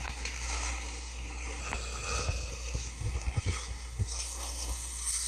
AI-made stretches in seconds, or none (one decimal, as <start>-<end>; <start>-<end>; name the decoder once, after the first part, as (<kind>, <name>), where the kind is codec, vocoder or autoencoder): 0.0-1.6 (codec, SNAC); 2.5-5.3